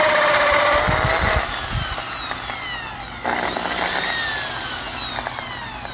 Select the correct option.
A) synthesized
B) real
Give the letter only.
B